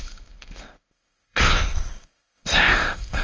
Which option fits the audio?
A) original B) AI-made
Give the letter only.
B